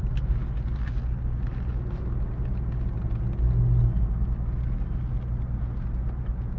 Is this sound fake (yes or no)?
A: no